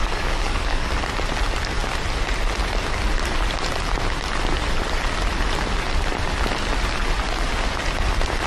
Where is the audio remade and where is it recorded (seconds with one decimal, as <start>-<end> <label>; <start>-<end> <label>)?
0.0-1.0 remade; 1.0-8.5 recorded